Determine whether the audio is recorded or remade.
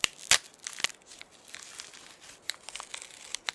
recorded